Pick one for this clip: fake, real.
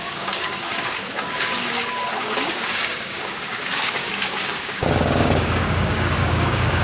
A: fake